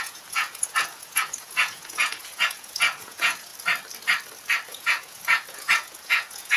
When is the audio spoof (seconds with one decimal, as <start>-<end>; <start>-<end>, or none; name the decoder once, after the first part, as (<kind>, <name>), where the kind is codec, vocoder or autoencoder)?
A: 0.0-3.5 (vocoder, Vocos); 4.7-6.6